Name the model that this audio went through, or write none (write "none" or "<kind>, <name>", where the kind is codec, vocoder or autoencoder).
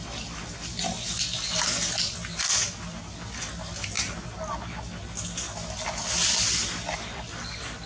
none